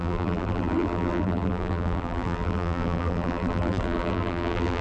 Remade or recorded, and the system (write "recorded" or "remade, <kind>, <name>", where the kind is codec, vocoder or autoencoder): remade, vocoder, BigVGAN v2